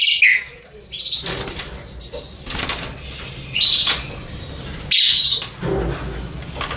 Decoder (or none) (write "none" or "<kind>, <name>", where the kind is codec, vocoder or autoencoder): none